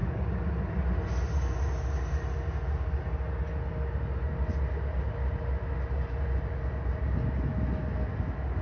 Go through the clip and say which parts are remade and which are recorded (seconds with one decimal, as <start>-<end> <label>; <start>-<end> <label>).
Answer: 0.0-8.6 recorded